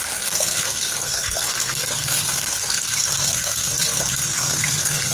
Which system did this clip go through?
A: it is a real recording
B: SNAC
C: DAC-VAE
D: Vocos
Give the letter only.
B